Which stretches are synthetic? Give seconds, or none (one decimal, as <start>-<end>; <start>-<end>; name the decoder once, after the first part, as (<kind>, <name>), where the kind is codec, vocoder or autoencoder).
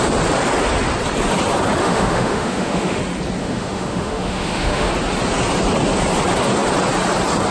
1.8-3.0 (autoencoder, DAC-VAE); 3.4-4.9